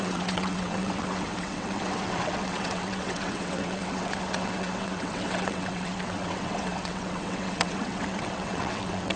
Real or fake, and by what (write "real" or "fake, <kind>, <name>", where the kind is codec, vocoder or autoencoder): fake, vocoder, WaveNeXt